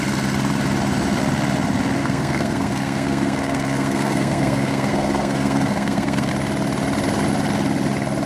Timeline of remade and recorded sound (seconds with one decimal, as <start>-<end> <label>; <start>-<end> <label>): 0.0-2.0 recorded; 2.0-6.3 remade; 6.3-8.3 recorded